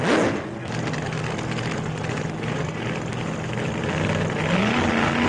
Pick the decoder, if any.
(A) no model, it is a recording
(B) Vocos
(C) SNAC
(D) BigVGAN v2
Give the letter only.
A